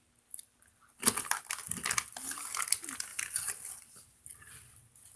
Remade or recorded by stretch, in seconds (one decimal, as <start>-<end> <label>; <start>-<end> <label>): 0.0-5.2 recorded